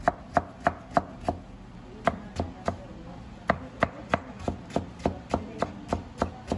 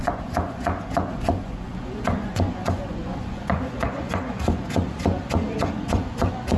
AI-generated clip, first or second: second